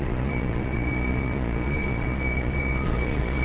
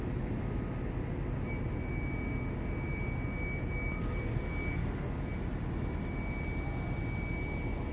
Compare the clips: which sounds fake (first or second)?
first